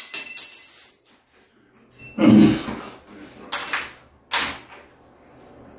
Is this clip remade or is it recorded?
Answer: recorded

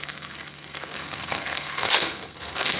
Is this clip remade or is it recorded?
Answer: remade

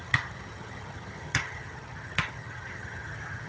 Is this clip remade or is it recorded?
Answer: remade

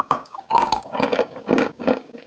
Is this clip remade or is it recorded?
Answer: remade